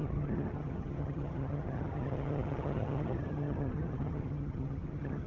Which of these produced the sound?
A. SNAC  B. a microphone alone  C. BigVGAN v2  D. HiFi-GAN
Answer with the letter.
D